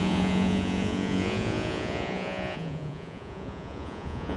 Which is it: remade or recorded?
remade